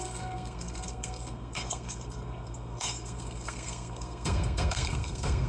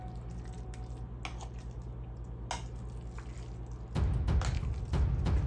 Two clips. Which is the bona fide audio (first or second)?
second